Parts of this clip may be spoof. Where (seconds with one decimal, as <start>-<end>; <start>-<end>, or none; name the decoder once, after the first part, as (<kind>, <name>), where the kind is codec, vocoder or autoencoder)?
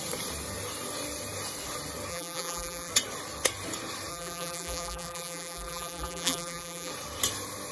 2.1-2.9 (vocoder, BigVGAN v2); 4.1-6.9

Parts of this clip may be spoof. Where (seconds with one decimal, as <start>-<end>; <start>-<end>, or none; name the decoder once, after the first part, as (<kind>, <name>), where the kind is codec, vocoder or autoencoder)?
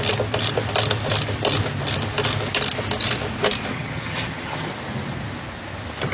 3.7-4.7 (vocoder, HiFi-GAN)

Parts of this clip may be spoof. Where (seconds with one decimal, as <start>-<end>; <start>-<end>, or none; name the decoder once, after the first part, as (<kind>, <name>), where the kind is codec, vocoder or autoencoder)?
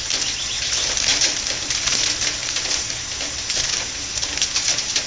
2.4-3.1 (vocoder, BigVGAN v2)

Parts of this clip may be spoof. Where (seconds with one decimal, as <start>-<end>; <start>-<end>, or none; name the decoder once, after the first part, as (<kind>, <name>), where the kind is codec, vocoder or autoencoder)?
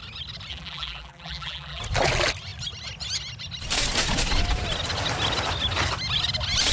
0.5-1.8 (vocoder, BigVGAN v2)